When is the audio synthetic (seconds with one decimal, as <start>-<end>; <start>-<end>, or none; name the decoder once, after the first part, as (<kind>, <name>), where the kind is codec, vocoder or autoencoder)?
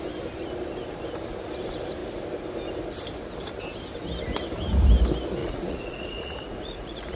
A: 5.4-7.2 (vocoder, Vocos)